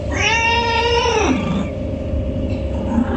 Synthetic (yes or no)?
no